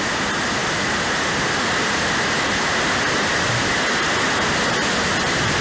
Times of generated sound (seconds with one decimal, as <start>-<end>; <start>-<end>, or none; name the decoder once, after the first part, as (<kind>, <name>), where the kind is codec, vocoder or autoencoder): none